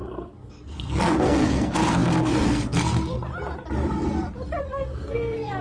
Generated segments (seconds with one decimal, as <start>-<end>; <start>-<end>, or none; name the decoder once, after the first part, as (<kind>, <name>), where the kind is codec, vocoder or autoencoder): 0.0-3.2 (codec, SNAC); 4.6-5.6